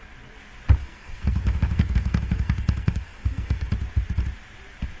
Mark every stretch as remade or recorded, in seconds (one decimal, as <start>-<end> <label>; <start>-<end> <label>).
0.0-0.8 recorded; 0.8-3.7 remade; 3.7-5.0 recorded